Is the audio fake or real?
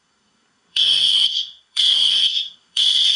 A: fake